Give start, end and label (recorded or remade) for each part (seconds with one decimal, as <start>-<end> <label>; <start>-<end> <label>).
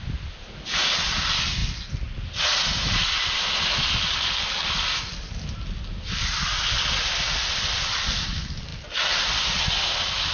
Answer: 0.0-10.3 recorded